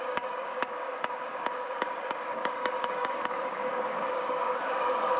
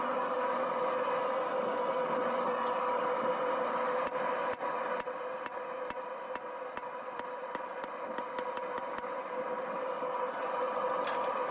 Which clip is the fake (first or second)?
first